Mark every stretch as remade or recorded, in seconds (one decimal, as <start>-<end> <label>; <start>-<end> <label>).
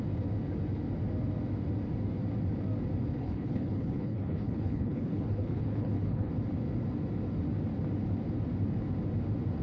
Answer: 0.0-3.2 recorded; 3.2-6.3 remade; 6.3-9.6 recorded